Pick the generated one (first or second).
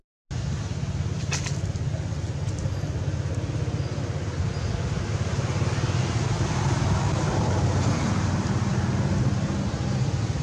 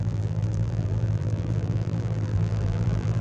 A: second